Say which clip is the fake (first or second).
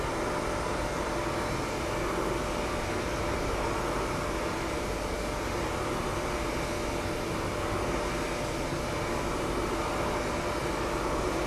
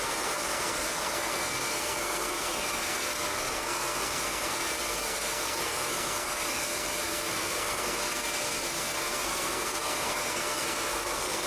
second